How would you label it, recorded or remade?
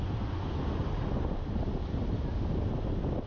recorded